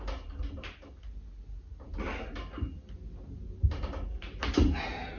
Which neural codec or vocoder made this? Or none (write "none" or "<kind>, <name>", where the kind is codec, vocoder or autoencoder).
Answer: none